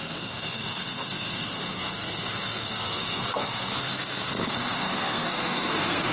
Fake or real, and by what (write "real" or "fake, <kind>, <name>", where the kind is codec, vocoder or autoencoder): fake, codec, SNAC